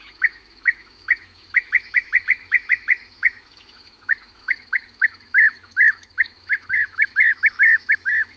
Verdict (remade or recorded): remade